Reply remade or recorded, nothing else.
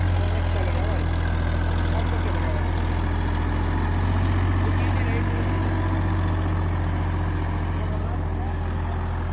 recorded